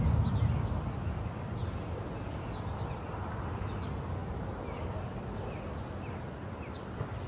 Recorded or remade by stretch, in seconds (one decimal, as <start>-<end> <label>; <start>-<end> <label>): 0.0-7.3 recorded